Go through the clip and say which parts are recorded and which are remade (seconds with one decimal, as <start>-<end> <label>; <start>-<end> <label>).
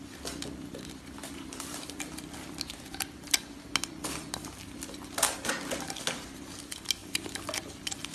0.0-8.1 recorded